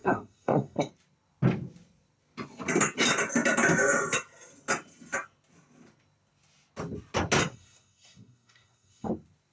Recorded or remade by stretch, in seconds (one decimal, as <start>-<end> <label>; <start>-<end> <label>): 0.0-0.9 remade; 0.9-7.4 recorded; 7.4-9.1 remade; 9.1-9.5 recorded